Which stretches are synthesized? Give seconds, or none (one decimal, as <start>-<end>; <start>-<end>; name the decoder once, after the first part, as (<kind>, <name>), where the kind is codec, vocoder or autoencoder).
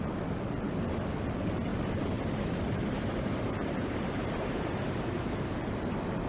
1.7-5.5 (vocoder, BigVGAN v2)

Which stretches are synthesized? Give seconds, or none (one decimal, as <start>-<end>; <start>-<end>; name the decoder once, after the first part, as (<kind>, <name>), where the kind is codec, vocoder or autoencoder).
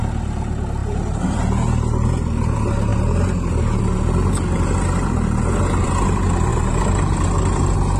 0.8-1.4 (vocoder, BigVGAN v2)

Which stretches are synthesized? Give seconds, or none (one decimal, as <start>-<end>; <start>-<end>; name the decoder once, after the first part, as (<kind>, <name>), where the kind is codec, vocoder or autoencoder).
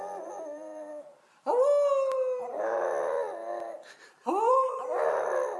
0.0-1.1 (vocoder, BigVGAN v2); 4.3-5.6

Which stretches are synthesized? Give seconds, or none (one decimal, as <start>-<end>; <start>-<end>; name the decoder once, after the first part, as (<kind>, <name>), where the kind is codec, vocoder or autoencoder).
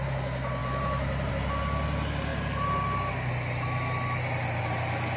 0.6-1.3 (vocoder, BigVGAN v2)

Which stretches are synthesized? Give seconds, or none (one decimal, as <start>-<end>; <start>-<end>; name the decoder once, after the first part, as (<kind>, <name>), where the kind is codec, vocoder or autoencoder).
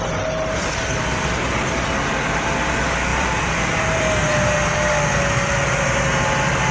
3.1-4.0 (vocoder, BigVGAN v2)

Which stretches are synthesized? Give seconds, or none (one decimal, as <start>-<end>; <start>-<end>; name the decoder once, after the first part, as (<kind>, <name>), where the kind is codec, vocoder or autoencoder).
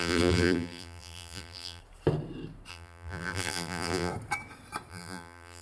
0.0-1.8 (vocoder, BigVGAN v2); 2.7-4.1; 4.9-5.6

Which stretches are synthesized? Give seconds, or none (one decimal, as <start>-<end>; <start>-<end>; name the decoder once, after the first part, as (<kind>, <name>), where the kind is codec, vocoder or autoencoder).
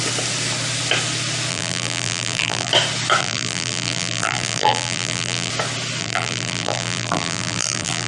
1.5-2.7 (vocoder, BigVGAN v2); 3.2-5.5; 6.0-8.1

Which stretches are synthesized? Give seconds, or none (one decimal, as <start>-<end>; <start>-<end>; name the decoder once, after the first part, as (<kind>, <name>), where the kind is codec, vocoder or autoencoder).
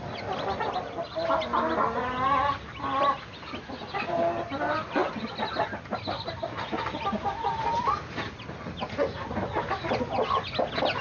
none